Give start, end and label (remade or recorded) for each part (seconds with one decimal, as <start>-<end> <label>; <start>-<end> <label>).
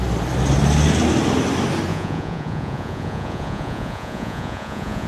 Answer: 0.0-1.9 recorded; 1.9-5.1 remade